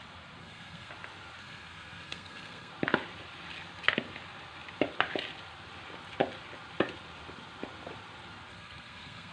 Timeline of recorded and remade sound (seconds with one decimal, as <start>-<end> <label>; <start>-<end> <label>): 0.0-0.4 recorded; 0.4-0.9 remade; 0.9-1.4 recorded; 1.4-2.7 remade; 2.7-8.5 recorded; 8.5-9.3 remade